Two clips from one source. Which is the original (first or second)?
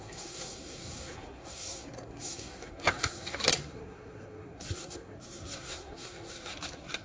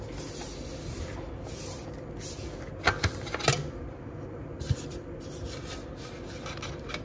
second